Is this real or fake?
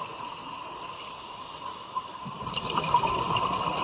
real